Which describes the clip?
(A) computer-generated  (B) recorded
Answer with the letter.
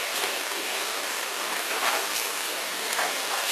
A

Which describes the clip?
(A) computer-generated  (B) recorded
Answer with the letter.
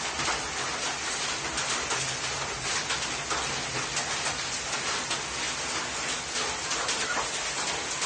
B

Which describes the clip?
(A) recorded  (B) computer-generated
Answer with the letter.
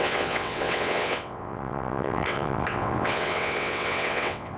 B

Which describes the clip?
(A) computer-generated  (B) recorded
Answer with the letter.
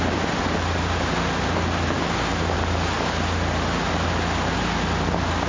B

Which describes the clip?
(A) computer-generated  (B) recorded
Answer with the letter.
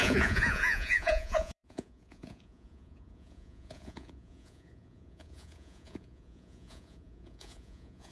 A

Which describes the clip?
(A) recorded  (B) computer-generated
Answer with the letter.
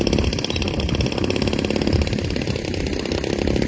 A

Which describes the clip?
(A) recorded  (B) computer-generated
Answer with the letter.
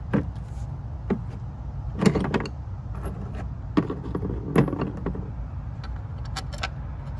A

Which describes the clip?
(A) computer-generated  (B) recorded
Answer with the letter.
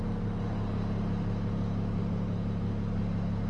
B